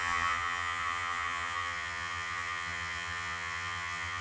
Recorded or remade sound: remade